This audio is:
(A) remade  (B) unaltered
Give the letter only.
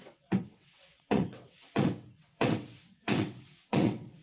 A